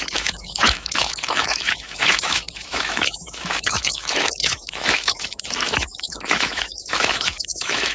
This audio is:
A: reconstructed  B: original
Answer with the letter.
A